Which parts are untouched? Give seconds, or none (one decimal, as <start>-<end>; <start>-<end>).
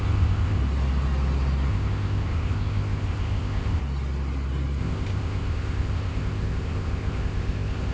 0.6-1.7; 3.8-4.8